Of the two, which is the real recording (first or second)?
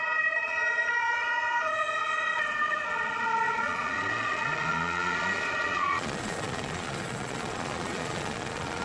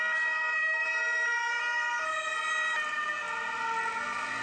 second